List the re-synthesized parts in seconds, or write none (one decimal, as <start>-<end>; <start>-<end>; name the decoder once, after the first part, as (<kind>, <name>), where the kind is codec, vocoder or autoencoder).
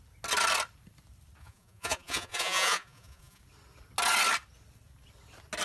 1.4-3.4 (vocoder, Vocos)